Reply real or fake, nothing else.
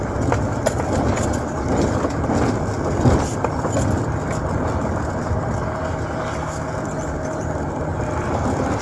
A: real